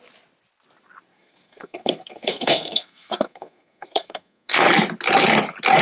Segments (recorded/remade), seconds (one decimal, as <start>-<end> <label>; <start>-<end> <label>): 0.0-1.1 recorded; 1.1-4.6 remade; 4.6-5.8 recorded